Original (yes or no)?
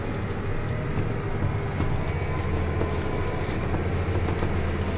yes